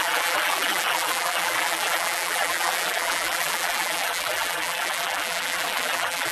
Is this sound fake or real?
fake